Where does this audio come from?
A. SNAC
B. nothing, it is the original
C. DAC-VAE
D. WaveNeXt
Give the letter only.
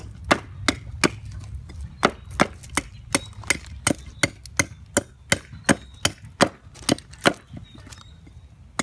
B